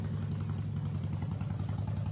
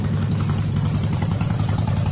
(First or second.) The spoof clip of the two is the second